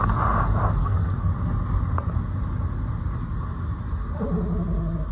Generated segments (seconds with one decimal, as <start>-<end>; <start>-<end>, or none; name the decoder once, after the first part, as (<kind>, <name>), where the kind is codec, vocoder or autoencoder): 0.8-1.3 (codec, SNAC)